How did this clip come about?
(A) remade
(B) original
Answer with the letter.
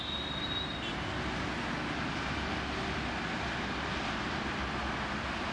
B